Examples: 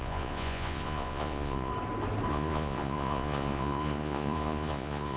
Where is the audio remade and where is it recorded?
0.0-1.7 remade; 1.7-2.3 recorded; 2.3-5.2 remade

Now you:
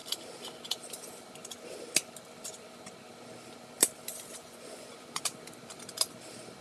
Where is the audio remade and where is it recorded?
0.0-4.4 recorded; 4.4-5.2 remade; 5.2-6.6 recorded

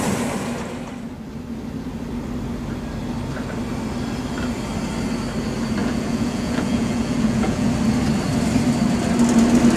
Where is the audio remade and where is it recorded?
0.0-5.8 recorded; 5.8-7.7 remade; 7.7-9.8 recorded

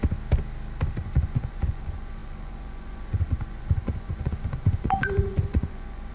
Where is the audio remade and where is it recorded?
0.0-1.0 recorded; 1.0-6.1 remade

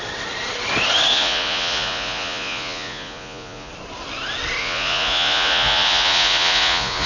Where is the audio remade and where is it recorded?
0.0-1.1 recorded; 1.1-3.7 remade; 3.7-4.6 recorded; 4.6-7.1 remade

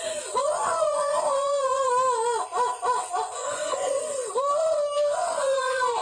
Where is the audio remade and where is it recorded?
0.0-0.4 recorded; 0.4-1.9 remade; 1.9-3.4 recorded; 3.4-4.0 remade; 4.0-5.2 recorded; 5.2-6.0 remade